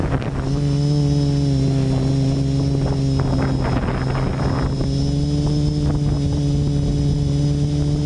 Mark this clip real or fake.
real